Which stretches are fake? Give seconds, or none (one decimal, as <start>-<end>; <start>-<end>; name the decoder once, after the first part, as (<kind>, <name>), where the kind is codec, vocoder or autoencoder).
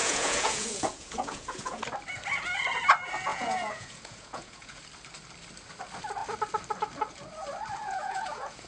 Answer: 0.0-1.8 (vocoder, Vocos); 3.3-4.8; 7.8-8.7